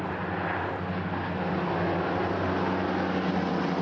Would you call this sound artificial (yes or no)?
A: no